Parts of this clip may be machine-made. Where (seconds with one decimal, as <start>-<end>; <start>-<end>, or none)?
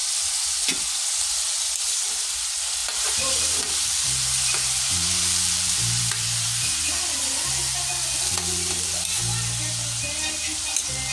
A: 2.8-7.0